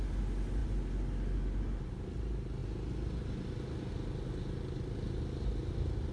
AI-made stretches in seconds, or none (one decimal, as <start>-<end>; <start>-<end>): none